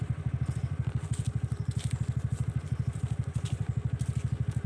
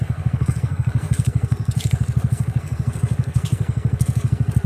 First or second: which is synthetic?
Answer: second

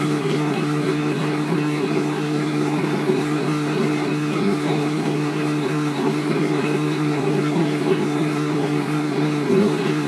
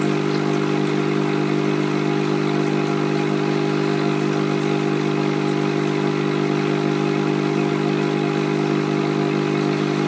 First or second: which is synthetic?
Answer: first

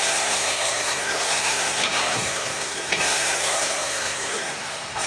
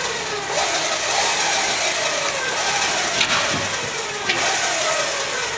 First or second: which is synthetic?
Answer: first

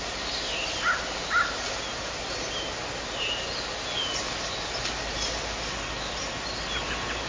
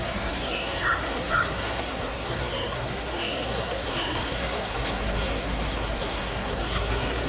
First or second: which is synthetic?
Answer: second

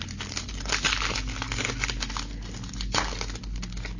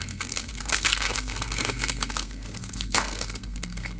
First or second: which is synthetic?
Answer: second